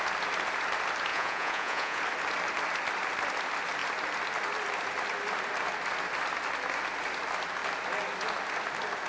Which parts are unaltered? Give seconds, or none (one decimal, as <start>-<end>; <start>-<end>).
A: 0.0-1.1; 2.0-9.1